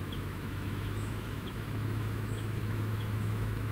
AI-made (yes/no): yes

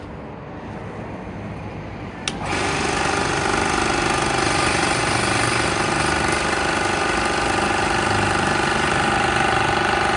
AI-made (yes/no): no